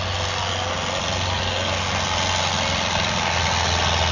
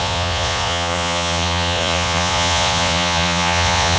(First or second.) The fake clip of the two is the second